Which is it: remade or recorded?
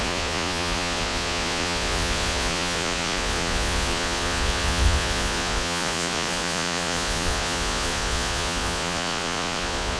remade